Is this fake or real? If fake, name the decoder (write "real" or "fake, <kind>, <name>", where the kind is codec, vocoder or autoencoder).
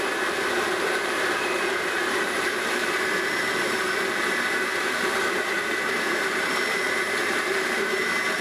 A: fake, vocoder, BigVGAN v2